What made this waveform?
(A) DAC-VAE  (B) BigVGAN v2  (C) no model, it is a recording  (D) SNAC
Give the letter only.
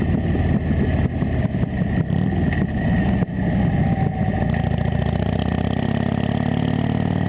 C